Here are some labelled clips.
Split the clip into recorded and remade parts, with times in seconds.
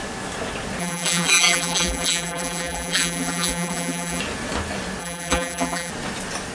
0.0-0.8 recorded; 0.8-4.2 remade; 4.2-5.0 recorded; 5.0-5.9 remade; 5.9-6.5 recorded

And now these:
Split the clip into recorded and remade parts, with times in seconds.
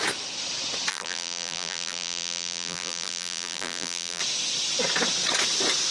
0.0-0.9 recorded; 0.9-4.2 remade; 4.2-5.9 recorded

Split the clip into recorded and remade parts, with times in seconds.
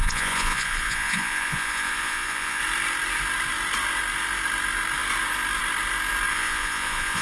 0.0-2.6 remade; 2.6-6.3 recorded; 6.3-7.2 remade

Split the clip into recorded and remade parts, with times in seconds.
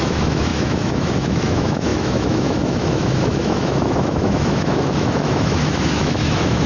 0.0-6.7 remade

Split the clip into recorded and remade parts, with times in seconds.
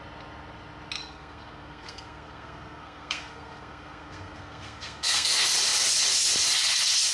0.0-1.0 recorded; 1.0-5.3 remade; 5.3-7.1 recorded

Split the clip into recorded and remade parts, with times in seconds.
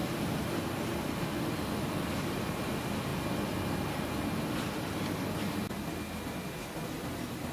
0.0-7.5 recorded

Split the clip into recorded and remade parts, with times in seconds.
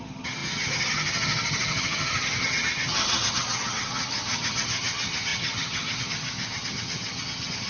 0.0-7.7 remade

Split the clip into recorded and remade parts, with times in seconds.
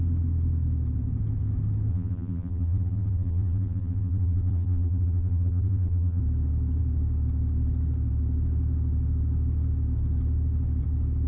0.0-1.9 recorded; 1.9-6.2 remade; 6.2-11.3 recorded